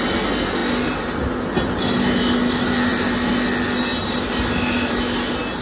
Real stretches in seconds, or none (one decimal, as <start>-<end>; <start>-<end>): 0.0-5.6